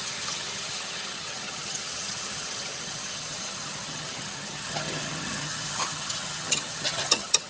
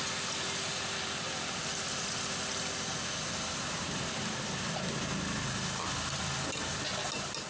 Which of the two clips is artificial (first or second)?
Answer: first